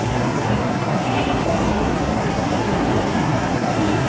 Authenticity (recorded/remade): remade